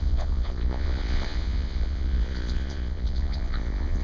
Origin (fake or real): fake